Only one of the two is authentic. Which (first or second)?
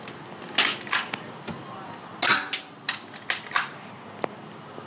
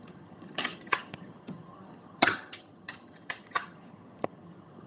first